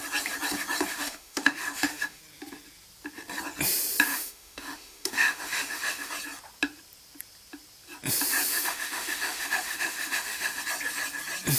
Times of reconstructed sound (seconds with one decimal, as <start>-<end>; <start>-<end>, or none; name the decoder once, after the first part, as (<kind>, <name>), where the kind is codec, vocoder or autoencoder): 0.9-2.2 (autoencoder, DAC-VAE); 4.1-6.1; 8.5-10.6